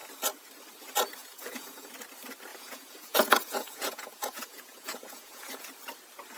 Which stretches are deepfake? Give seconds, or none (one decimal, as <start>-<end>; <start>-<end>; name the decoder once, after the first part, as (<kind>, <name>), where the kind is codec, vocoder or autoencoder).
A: 1.2-1.9 (vocoder, Vocos); 2.5-5.7